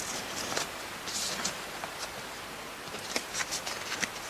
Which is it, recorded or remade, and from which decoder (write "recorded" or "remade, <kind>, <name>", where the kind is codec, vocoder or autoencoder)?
recorded